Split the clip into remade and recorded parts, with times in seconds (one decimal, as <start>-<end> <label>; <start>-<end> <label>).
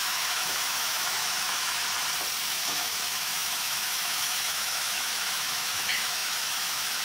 0.0-1.8 remade; 1.8-2.4 recorded; 2.4-7.0 remade